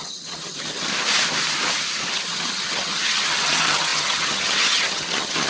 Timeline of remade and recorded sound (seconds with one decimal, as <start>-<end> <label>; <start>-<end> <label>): 0.0-0.9 remade; 0.9-2.1 recorded; 2.1-5.5 remade

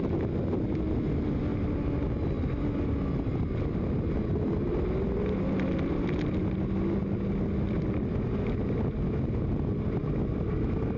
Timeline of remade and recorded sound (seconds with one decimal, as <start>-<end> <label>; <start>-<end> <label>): 0.0-11.0 recorded

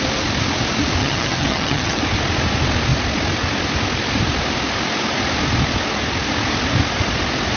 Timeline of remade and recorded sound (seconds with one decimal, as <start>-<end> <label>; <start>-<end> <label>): 0.0-1.0 recorded; 1.0-2.0 remade; 2.0-7.6 recorded